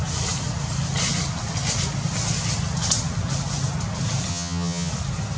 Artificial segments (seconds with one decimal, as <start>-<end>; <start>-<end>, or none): 4.3-4.9